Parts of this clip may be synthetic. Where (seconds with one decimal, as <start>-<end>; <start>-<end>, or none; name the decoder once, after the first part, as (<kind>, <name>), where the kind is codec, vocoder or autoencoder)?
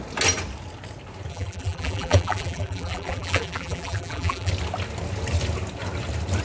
1.3-4.5 (vocoder, BigVGAN v2)